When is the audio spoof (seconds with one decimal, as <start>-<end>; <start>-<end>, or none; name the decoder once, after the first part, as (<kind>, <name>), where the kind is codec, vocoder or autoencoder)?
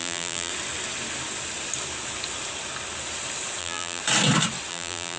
0.0-0.5 (vocoder, BigVGAN v2); 3.6-4.0; 4.7-5.2